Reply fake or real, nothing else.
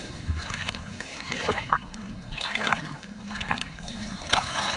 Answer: fake